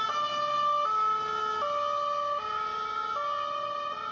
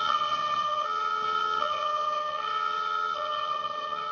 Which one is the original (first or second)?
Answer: first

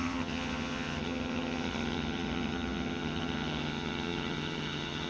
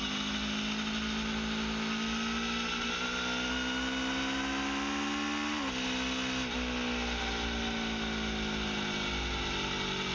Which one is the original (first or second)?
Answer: second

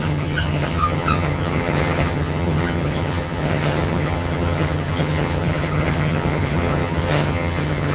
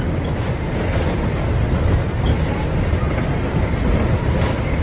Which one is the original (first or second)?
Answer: second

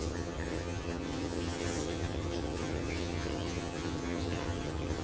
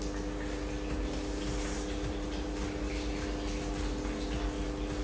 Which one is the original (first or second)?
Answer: second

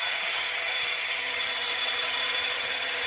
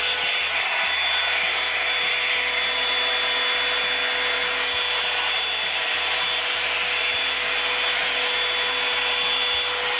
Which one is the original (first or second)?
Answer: second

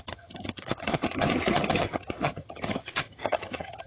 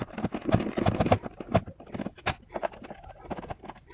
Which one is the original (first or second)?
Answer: second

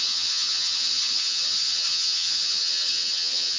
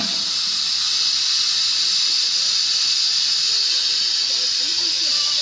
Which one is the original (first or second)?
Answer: second